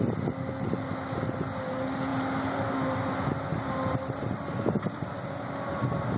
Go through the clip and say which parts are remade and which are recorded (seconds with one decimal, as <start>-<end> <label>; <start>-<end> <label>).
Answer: 0.0-6.2 recorded